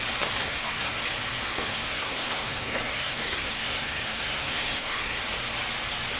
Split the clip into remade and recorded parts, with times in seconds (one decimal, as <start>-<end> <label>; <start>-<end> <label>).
0.0-0.4 recorded; 0.4-1.0 remade; 1.0-1.5 recorded; 1.5-5.2 remade; 5.2-6.2 recorded